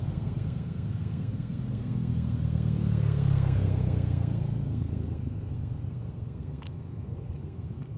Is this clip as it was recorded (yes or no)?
no